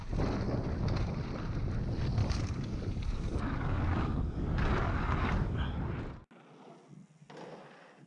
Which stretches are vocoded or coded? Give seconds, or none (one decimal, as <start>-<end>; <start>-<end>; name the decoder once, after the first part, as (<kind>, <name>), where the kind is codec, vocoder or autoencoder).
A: 2.2-5.6 (codec, DAC)